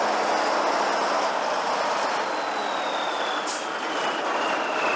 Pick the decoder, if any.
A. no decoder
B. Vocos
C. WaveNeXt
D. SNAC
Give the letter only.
A